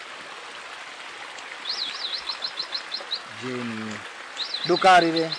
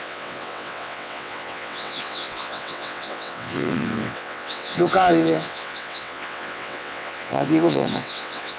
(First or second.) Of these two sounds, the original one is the first